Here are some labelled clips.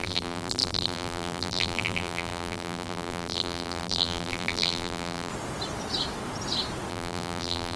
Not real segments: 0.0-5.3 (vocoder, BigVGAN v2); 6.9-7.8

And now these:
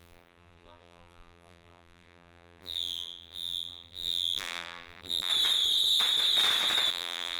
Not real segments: 0.0-5.3 (vocoder, BigVGAN v2); 6.9-7.4

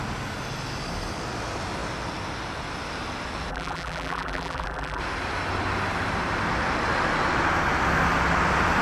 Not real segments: 3.5-5.0 (vocoder, BigVGAN v2)

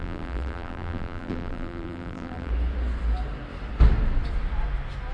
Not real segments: 0.0-2.5 (vocoder, BigVGAN v2)

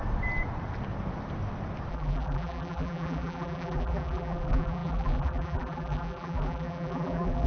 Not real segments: 1.9-7.5 (vocoder, BigVGAN v2)